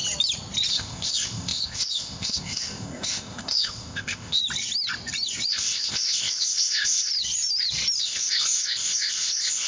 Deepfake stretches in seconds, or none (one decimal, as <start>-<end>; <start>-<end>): 0.7-4.4; 5.5-7.1; 8.0-9.7